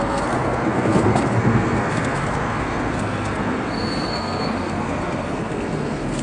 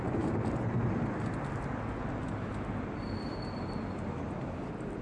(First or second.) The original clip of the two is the second